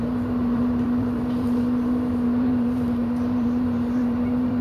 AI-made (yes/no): yes